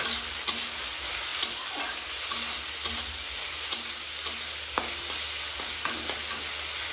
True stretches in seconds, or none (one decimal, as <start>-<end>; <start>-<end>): 0.0-6.9